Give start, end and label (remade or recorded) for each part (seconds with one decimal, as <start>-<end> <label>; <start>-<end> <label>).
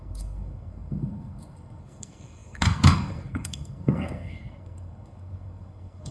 0.0-6.1 remade